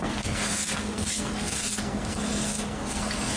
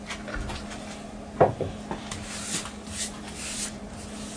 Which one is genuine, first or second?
second